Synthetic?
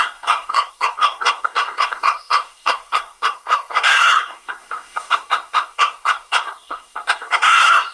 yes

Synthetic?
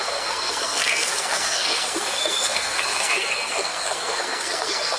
yes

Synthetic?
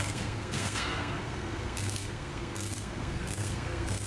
yes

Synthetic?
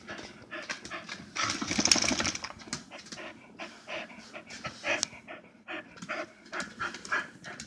no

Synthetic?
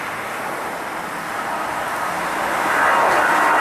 no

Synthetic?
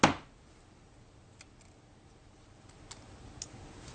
no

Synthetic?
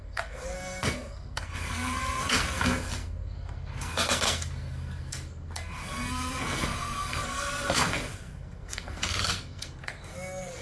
yes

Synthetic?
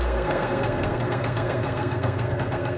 yes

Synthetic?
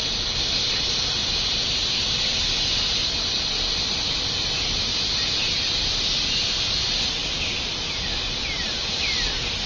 no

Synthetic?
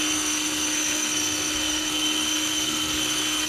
yes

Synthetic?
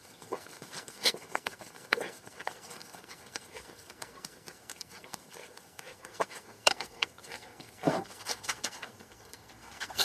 yes